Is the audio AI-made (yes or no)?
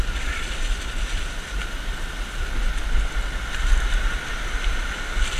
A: no